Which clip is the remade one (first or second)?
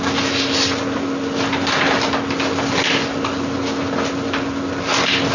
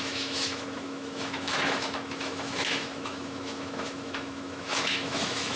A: second